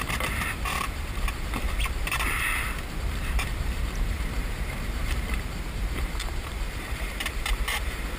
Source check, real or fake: fake